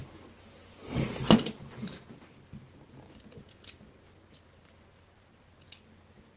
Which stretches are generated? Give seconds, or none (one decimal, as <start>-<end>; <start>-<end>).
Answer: none